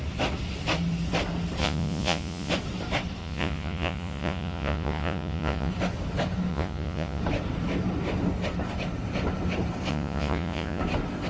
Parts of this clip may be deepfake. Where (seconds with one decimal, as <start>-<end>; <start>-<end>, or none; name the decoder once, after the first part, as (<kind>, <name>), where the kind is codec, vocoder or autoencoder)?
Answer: 1.6-2.5 (vocoder, Vocos); 3.2-5.7; 6.5-7.2; 9.9-10.8